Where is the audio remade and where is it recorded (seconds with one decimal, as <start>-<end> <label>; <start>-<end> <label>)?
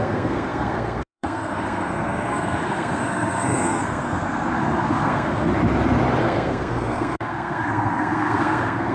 0.0-5.5 remade; 5.5-6.2 recorded; 6.2-8.9 remade